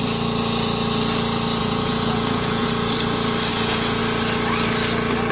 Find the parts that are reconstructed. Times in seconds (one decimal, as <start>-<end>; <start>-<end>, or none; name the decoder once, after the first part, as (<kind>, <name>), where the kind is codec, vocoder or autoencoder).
1.6-2.7 (vocoder, Vocos); 3.5-4.0